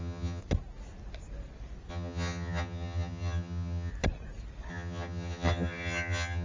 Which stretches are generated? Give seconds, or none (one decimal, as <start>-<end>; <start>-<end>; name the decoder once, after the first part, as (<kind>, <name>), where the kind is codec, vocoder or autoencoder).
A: 0.0-0.4 (vocoder, HiFi-GAN); 1.9-3.9; 4.7-6.4